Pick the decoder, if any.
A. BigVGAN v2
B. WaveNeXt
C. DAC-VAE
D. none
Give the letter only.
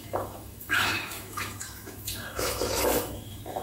C